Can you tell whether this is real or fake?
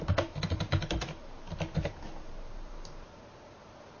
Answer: fake